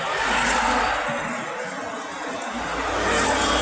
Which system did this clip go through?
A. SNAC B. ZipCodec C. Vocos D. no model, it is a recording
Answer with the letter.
D